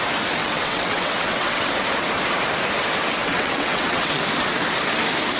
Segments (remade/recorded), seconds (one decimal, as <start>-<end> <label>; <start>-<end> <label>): 0.0-0.4 recorded; 0.4-1.7 remade; 1.7-3.2 recorded; 3.2-4.2 remade; 4.2-5.4 recorded